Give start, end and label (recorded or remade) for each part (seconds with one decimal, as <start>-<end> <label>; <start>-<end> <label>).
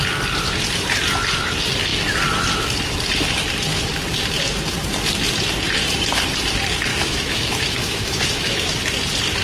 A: 0.0-6.9 recorded; 6.9-8.8 remade; 8.8-9.4 recorded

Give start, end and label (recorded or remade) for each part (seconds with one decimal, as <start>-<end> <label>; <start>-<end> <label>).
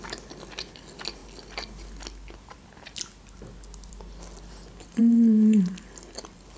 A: 0.0-6.6 recorded